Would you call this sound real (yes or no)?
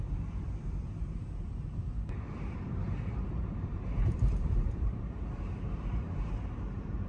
no